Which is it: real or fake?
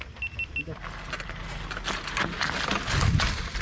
real